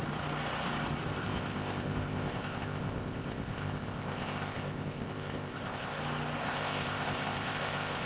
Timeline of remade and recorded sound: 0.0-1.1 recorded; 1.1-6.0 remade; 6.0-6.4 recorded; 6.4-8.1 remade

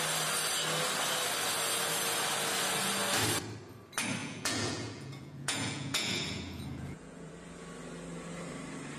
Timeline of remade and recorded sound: 0.0-4.2 recorded; 4.2-7.3 remade; 7.3-9.0 recorded

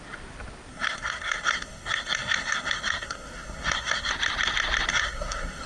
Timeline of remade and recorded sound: 0.0-0.7 recorded; 0.7-4.1 remade; 4.1-4.9 recorded; 4.9-5.7 remade